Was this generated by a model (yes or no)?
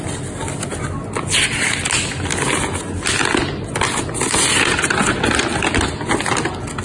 no